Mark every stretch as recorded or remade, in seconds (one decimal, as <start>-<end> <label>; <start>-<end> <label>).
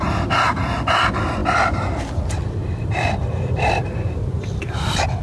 0.0-1.4 recorded; 1.4-2.1 remade; 2.1-2.6 recorded; 2.6-4.8 remade; 4.8-5.2 recorded